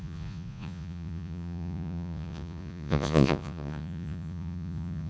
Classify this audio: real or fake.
fake